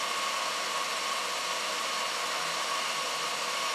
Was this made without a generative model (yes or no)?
yes